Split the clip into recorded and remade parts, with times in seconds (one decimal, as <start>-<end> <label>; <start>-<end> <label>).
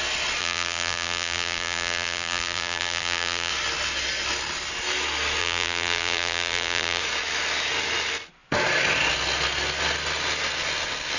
0.0-0.4 recorded; 0.4-3.5 remade; 3.5-5.4 recorded; 5.4-7.0 remade; 7.0-11.2 recorded